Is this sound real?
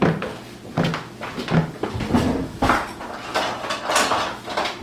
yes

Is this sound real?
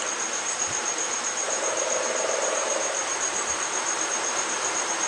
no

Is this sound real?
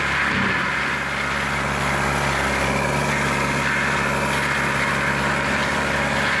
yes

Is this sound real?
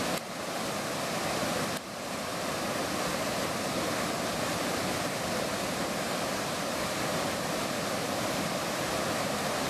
no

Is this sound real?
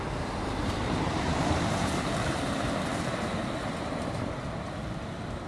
no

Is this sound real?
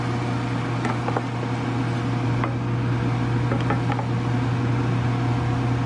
yes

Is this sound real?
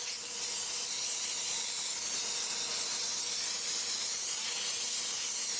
yes